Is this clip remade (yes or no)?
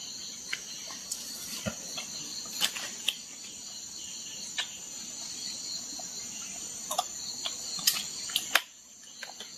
no